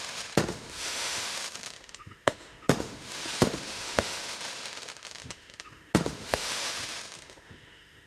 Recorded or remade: remade